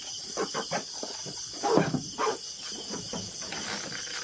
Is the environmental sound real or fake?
real